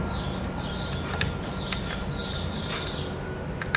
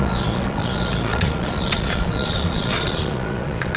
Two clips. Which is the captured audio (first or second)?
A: first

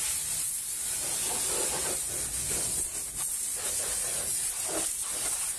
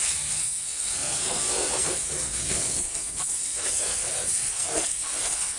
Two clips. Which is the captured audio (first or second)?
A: first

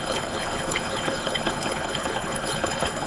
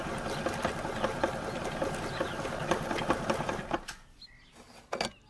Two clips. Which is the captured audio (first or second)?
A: second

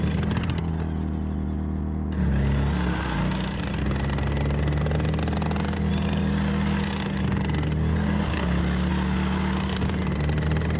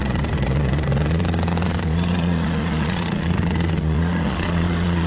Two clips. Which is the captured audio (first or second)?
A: first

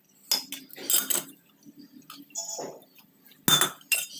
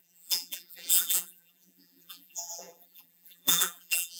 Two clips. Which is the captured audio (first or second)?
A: first